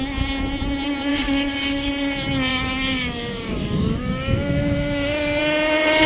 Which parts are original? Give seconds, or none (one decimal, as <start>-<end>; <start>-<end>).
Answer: 0.0-1.1; 1.9-2.5; 5.4-6.1